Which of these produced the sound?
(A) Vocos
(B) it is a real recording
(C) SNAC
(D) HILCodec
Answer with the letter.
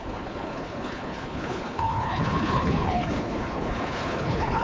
D